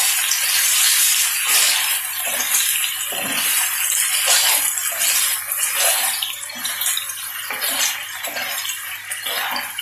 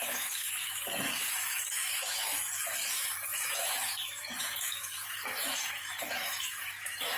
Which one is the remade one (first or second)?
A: second